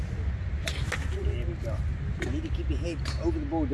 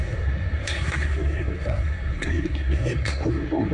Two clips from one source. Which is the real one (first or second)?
first